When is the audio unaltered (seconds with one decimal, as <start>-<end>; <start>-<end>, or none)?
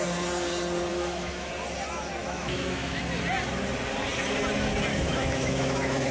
0.0-0.9; 1.5-2.2; 3.0-4.9